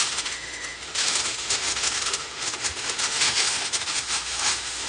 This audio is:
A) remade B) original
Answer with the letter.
A